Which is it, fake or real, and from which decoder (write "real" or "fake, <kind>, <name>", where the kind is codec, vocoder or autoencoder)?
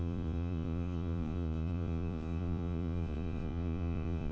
fake, vocoder, Vocos